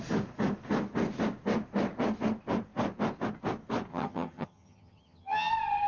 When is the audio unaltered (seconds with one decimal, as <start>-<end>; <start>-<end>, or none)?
0.0-3.9; 5.5-5.9